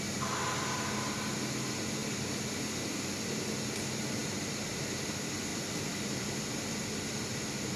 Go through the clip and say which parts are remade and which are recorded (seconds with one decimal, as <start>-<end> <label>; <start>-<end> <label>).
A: 0.0-4.2 recorded; 4.2-4.7 remade; 4.7-5.5 recorded; 5.5-6.5 remade; 6.5-7.8 recorded